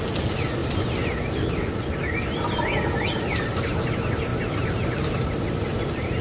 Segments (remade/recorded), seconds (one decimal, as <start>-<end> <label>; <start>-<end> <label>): 0.0-6.2 recorded